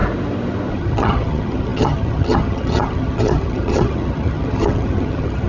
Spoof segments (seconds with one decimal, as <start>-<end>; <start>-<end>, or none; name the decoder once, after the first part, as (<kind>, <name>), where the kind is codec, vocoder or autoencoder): 0.7-5.5 (vocoder, HiFi-GAN)